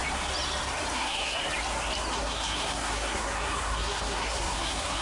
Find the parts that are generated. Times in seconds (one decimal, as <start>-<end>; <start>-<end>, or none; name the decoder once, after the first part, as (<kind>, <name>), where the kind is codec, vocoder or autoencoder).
0.9-1.4 (codec, SNAC); 2.1-5.0